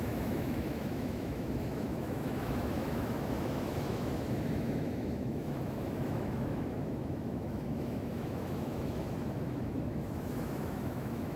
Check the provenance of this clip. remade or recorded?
remade